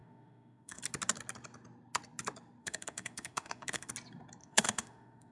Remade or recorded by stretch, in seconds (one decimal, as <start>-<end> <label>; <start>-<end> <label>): 0.0-0.8 remade; 0.8-2.6 recorded; 2.6-3.9 remade; 3.9-4.4 recorded; 4.4-5.3 remade